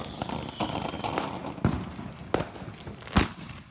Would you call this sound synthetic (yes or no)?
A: no